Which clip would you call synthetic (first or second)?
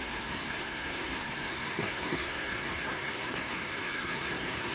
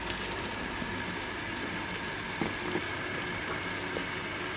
first